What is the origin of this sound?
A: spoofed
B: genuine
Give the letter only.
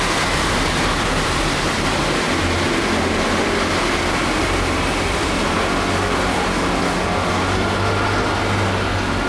B